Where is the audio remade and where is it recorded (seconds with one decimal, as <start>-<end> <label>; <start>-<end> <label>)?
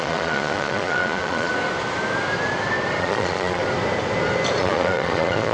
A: 0.0-1.5 remade; 1.5-3.0 recorded; 3.0-3.6 remade; 3.6-4.6 recorded; 4.6-5.5 remade